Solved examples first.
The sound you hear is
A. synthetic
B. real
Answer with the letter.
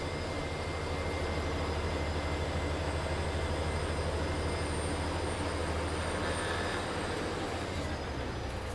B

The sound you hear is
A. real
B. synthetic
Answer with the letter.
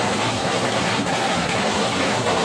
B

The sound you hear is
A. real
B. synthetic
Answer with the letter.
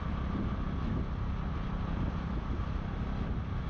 A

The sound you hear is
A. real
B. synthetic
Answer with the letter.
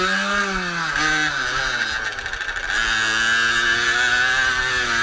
A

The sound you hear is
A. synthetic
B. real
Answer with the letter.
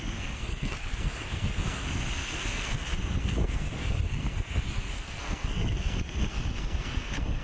A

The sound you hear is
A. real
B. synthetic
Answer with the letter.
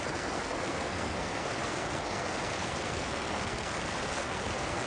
B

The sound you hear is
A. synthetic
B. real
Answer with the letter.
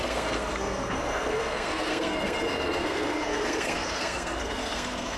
A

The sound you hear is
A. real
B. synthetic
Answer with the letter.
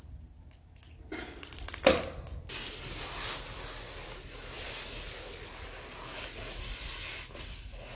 A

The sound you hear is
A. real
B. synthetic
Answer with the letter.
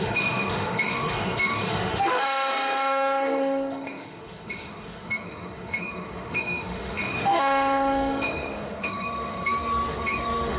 B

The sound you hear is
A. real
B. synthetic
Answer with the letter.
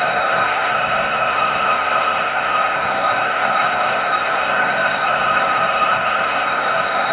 B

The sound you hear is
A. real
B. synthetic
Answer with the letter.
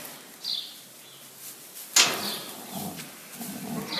A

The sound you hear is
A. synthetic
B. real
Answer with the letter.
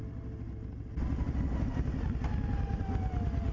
B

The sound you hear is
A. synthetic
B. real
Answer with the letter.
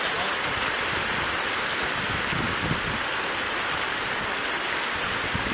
B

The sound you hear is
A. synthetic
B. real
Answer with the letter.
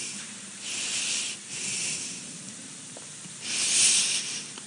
B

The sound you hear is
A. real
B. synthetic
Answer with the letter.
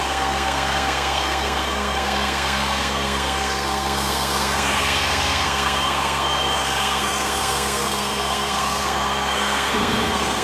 B